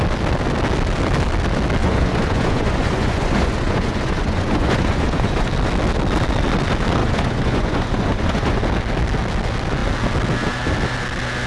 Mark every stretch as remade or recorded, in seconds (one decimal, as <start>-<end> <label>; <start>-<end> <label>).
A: 0.0-1.8 recorded; 1.8-5.5 remade; 5.5-7.0 recorded; 7.0-8.6 remade; 8.6-11.5 recorded